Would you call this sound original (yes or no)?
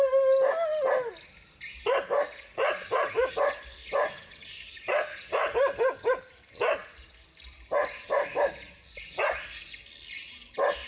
yes